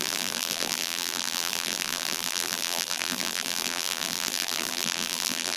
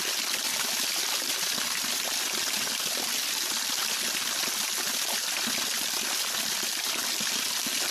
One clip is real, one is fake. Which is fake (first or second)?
first